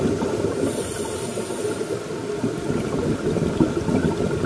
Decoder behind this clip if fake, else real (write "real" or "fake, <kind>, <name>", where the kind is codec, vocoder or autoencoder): real